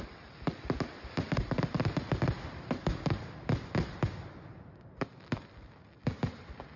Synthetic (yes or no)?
no